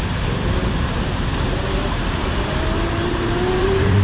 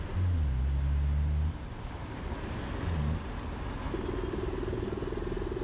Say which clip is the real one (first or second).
second